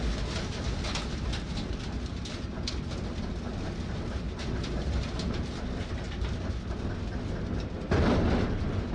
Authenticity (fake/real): real